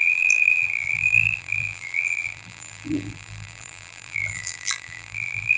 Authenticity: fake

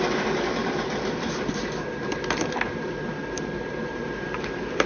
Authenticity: fake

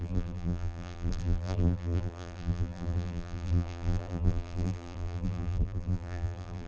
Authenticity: fake